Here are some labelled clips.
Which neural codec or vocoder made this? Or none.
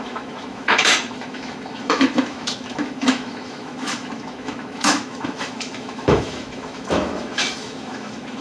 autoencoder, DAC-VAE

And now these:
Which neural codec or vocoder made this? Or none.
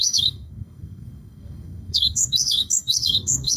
codec, SNAC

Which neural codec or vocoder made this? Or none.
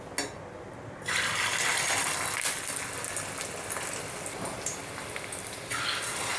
none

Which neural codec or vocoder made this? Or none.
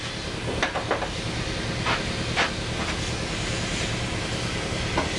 none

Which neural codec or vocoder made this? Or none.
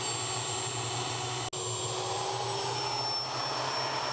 none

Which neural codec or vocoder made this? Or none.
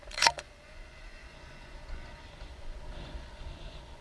vocoder, Vocos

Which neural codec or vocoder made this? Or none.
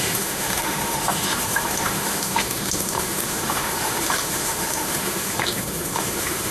autoencoder, DAC-VAE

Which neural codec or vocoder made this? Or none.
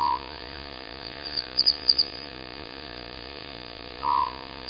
vocoder, Vocos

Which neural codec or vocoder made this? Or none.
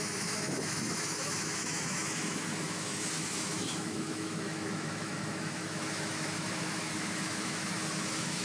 autoencoder, DAC-VAE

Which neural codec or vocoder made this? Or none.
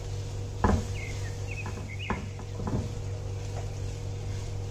none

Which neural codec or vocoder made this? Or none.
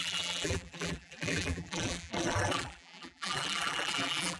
vocoder, BigVGAN v2